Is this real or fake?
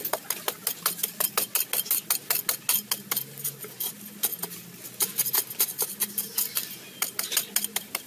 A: real